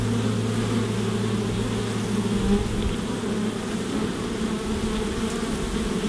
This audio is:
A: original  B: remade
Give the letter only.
A